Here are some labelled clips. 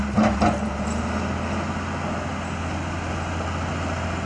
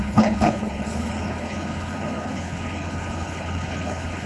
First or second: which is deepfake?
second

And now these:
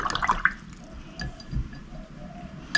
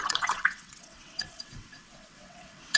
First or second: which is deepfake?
second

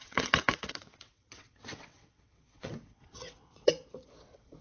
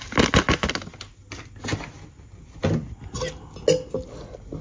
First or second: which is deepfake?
first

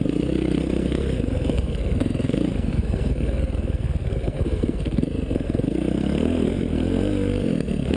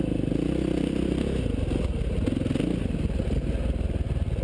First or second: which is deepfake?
first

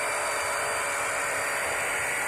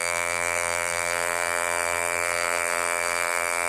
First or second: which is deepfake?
second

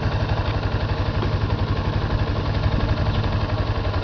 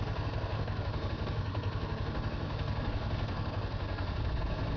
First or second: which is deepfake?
second